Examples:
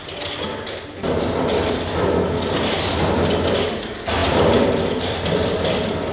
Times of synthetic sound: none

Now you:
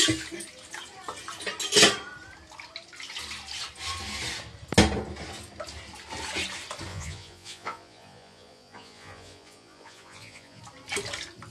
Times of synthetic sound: 6.9-10.6 (vocoder, Vocos)

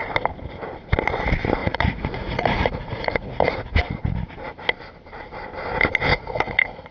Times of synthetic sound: 1.6-3.8 (vocoder, Vocos); 6.1-6.9

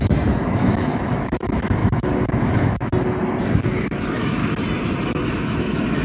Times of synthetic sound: 0.0-2.9 (autoencoder, DAC-VAE); 3.5-4.4; 5.3-6.0

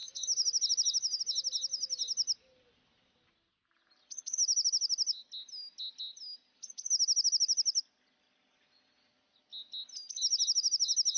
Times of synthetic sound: none